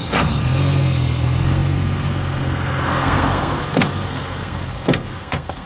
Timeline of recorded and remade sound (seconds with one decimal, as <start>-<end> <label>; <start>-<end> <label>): 0.0-5.7 remade